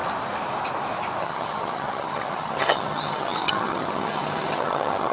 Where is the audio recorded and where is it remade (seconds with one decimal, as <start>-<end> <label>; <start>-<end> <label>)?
0.0-1.2 recorded; 1.2-5.1 remade